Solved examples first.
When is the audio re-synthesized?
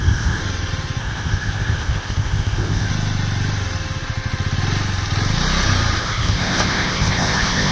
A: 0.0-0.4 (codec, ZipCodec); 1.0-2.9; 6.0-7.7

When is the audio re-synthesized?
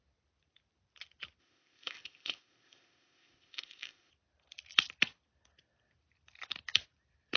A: 1.4-4.1 (codec, ZipCodec)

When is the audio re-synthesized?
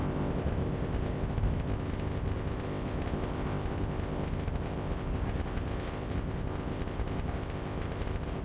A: 0.0-8.4 (codec, ZipCodec)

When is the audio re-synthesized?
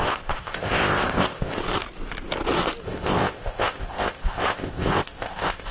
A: 0.0-1.6 (codec, ZipCodec); 2.8-5.7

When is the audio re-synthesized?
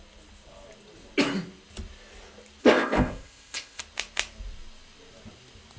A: 2.6-3.8 (codec, ZipCodec)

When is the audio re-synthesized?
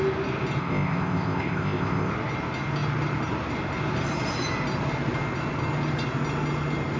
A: 0.6-2.1 (codec, ZipCodec)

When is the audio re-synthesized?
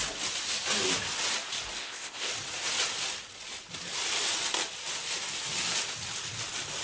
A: 1.8-2.3 (codec, ZipCodec)